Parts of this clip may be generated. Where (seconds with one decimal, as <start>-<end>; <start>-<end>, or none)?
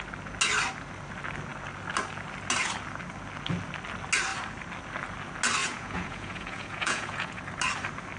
5.6-7.4